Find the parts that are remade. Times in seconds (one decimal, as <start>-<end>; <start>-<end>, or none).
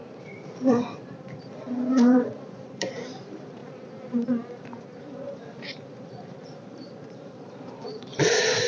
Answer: 0.0-8.7